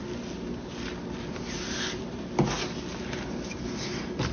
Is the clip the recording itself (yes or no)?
yes